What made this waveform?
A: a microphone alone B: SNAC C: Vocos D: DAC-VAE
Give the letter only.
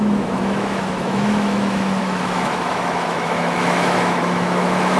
D